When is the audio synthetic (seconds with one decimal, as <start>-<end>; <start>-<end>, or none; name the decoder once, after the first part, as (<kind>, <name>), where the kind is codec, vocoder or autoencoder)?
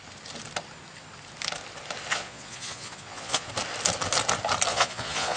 2.1-3.5 (vocoder, Vocos); 4.7-5.4